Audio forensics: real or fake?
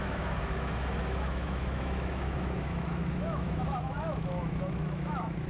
fake